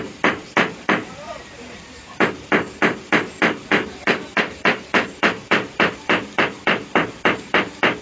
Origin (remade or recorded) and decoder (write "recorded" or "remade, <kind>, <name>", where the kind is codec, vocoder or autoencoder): remade, vocoder, BigVGAN v2